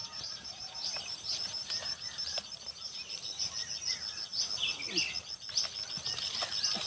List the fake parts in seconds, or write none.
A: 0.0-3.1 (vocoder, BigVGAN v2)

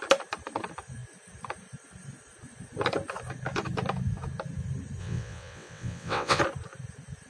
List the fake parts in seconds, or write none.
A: 5.0-6.4 (vocoder, WaveNeXt)